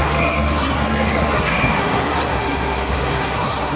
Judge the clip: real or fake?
fake